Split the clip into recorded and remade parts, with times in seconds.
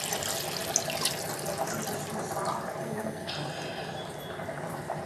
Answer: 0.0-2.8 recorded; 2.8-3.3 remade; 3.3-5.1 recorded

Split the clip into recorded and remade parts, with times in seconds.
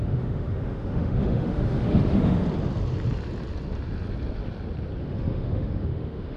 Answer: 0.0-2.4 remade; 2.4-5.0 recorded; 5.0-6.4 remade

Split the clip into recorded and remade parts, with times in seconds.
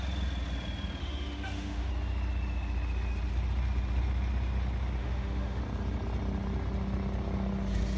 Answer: 0.0-1.0 recorded; 1.0-1.9 remade; 1.9-5.0 recorded; 5.0-5.6 remade; 5.6-8.0 recorded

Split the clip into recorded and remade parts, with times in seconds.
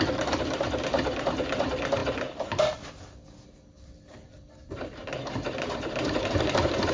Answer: 0.0-2.0 remade; 2.0-4.5 recorded; 4.5-6.9 remade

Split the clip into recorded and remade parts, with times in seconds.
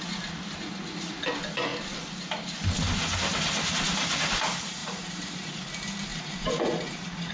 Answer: 0.0-4.8 recorded; 4.8-5.6 remade; 5.6-6.1 recorded; 6.1-7.3 remade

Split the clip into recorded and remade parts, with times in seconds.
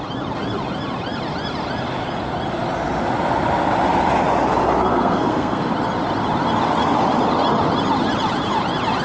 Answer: 0.0-4.9 recorded; 4.9-5.7 remade; 5.7-9.0 recorded